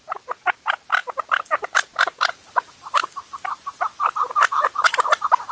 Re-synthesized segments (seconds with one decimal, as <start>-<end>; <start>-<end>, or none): 0.0-5.5